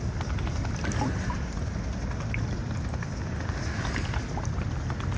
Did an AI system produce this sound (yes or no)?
no